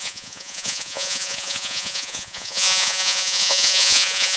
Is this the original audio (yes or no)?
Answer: no